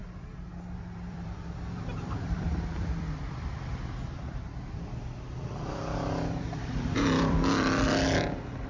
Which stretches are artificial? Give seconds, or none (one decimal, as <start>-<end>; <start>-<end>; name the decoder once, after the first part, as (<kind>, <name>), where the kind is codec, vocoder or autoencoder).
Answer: 1.1-8.7 (vocoder, BigVGAN v2)